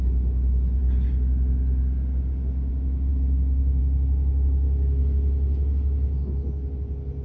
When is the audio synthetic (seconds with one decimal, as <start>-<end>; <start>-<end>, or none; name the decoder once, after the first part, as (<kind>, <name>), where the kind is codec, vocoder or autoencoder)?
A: none